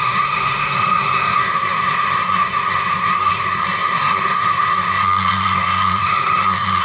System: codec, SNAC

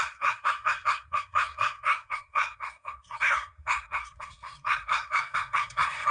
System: codec, SNAC